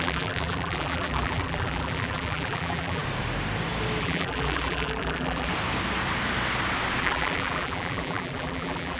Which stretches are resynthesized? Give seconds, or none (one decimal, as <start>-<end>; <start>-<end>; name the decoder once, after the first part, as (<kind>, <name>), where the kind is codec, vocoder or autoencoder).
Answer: 0.0-3.0 (vocoder, BigVGAN v2); 4.0-5.5; 7.0-9.0